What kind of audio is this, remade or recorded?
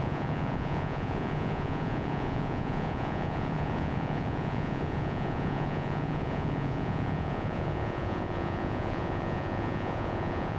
remade